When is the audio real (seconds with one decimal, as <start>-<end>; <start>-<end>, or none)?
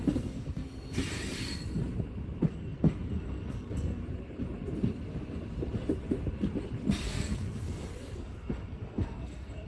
1.0-2.5; 4.0-7.0